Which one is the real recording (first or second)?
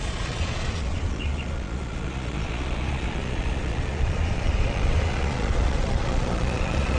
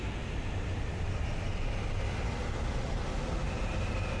second